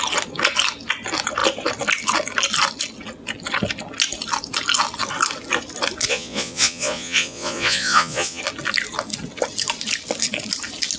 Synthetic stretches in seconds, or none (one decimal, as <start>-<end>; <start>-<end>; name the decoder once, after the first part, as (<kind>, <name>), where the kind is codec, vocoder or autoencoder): 6.1-8.4 (vocoder, Vocos)